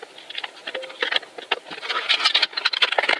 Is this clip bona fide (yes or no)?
yes